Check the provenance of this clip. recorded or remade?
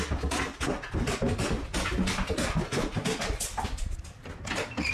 recorded